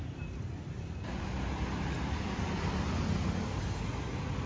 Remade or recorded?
recorded